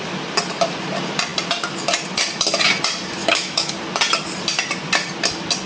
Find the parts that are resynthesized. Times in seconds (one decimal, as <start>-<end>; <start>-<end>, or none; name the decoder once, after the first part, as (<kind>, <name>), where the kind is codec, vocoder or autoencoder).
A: 3.2-3.7 (autoencoder, DAC-VAE)